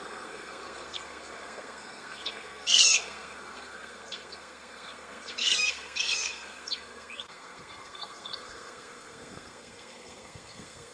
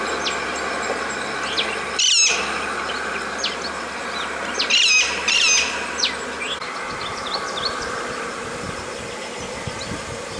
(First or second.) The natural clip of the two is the second